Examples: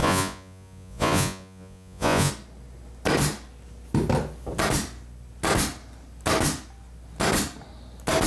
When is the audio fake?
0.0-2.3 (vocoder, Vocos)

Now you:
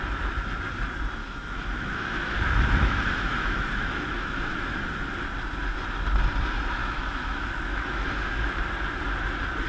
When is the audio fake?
1.2-4.8 (autoencoder, DAC-VAE); 6.8-8.6

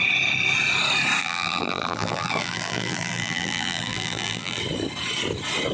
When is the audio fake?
1.2-4.6 (vocoder, BigVGAN v2)